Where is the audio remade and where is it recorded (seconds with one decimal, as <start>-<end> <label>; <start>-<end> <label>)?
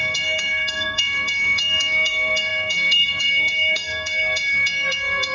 0.0-5.3 remade